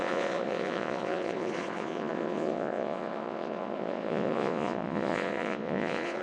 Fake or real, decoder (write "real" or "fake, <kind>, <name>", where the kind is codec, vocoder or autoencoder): fake, vocoder, Vocos